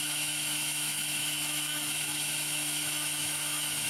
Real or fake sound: fake